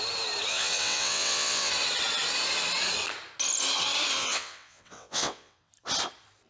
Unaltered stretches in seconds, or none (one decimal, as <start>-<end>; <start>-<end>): 0.0-0.5; 1.7-4.2; 5.7-6.5